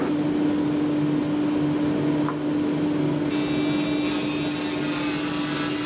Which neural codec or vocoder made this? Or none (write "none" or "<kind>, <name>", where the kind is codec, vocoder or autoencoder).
none